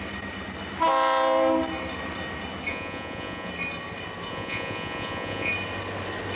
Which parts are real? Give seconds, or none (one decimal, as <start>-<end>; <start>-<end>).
0.0-2.7; 3.5-4.3; 5.5-6.4